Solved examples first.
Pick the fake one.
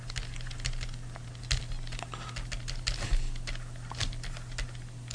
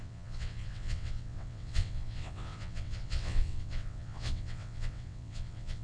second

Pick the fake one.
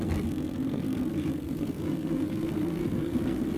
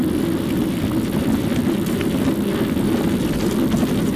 first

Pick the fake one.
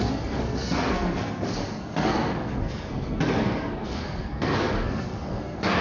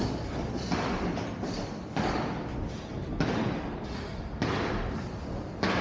first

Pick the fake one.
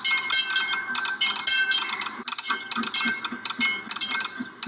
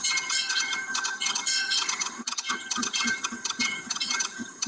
second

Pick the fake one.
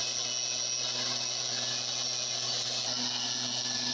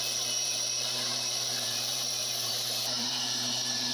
second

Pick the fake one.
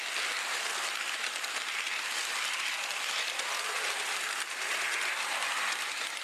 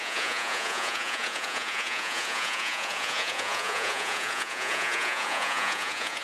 second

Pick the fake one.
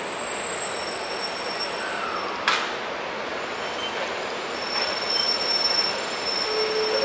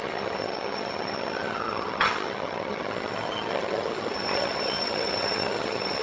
second